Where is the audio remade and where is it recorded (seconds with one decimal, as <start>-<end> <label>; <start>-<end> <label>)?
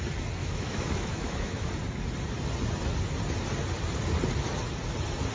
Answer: 0.0-0.4 recorded; 0.4-1.7 remade; 1.7-5.3 recorded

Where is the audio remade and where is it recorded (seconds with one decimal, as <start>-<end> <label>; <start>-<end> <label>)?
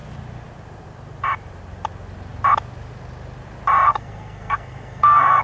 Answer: 0.0-3.9 recorded; 3.9-5.4 remade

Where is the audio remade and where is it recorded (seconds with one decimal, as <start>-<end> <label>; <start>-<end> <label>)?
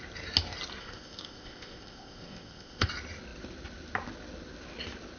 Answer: 0.0-0.8 recorded; 0.8-2.9 remade; 2.9-5.2 recorded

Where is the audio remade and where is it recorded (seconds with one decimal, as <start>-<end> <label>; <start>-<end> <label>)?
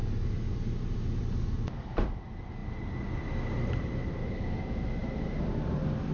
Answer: 0.0-6.1 recorded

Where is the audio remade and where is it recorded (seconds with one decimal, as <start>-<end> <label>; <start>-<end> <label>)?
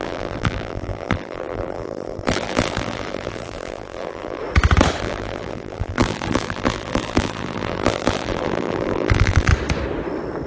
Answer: 0.0-4.4 remade; 4.4-5.0 recorded; 5.0-9.5 remade; 9.5-10.5 recorded